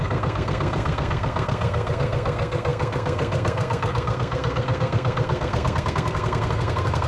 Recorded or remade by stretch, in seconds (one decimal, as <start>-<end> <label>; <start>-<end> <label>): 0.0-7.1 remade